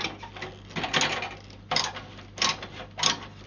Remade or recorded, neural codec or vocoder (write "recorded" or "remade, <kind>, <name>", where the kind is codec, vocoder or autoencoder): recorded